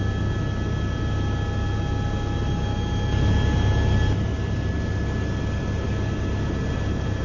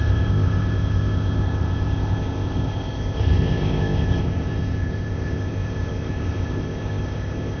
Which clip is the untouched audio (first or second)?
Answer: first